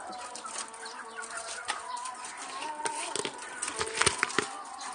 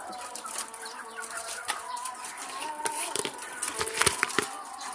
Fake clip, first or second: second